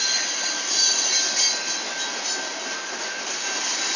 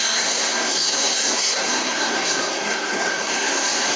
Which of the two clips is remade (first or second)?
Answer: second